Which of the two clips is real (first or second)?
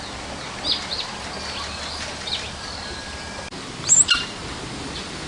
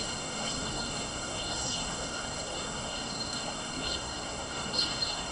first